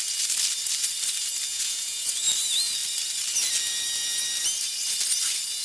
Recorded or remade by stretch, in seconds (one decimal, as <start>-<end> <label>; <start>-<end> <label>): 0.0-1.5 recorded; 1.5-2.1 remade; 2.1-5.6 recorded